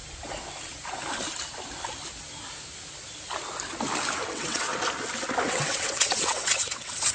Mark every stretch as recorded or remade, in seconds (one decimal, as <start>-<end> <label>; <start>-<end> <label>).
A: 0.0-4.3 recorded; 4.3-4.7 remade; 4.7-5.5 recorded; 5.5-7.1 remade